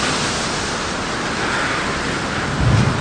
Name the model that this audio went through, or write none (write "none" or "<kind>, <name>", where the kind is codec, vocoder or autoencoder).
none